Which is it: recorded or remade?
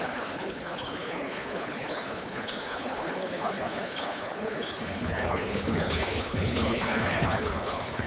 remade